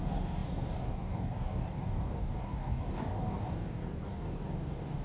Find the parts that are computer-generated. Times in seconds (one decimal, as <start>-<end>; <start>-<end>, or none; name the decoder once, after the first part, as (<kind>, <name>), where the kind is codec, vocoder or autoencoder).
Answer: 0.0-5.0 (codec, DAC)